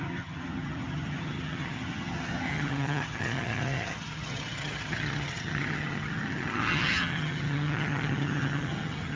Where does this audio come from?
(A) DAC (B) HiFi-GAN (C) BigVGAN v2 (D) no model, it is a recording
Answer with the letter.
B